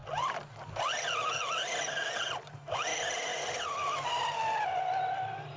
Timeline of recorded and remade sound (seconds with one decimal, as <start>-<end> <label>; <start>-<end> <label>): 0.0-5.6 recorded

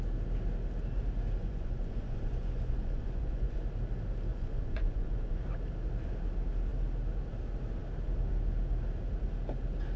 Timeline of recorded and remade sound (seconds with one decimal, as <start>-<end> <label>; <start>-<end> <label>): 0.0-1.4 recorded; 1.4-3.6 remade; 3.6-4.3 recorded; 4.3-5.4 remade; 5.4-10.0 recorded

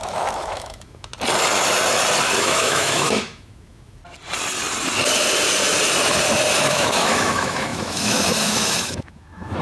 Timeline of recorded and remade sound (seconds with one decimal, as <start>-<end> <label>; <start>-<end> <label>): 0.0-1.1 remade; 1.1-2.4 recorded; 2.4-4.0 remade; 4.0-6.6 recorded; 6.6-9.6 remade

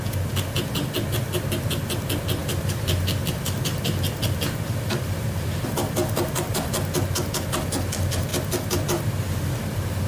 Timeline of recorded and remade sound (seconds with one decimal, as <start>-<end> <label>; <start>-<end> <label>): 0.0-2.4 recorded; 2.4-6.8 remade; 6.8-10.1 recorded

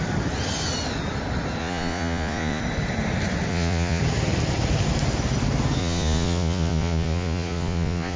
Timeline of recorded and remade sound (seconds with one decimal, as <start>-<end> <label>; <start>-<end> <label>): 0.0-1.6 recorded; 1.6-2.6 remade; 2.6-3.5 recorded; 3.5-4.0 remade; 4.0-5.8 recorded; 5.8-8.2 remade